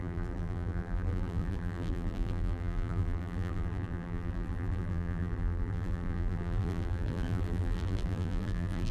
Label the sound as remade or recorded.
remade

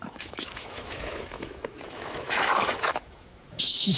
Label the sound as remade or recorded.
remade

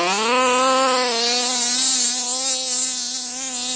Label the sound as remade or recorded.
recorded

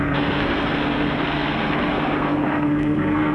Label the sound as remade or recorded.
remade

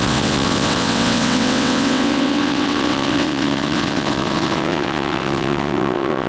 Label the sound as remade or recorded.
remade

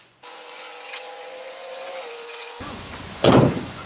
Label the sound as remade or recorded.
remade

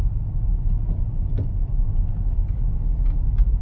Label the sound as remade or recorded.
recorded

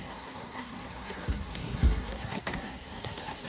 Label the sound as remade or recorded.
remade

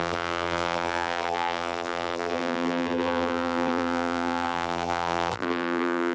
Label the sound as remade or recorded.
remade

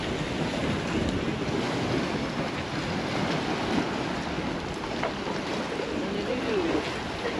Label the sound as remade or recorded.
recorded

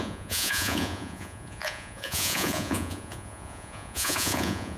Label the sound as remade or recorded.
remade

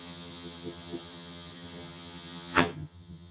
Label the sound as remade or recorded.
remade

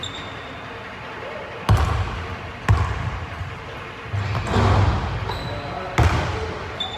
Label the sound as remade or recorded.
recorded